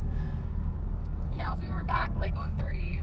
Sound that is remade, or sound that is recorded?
remade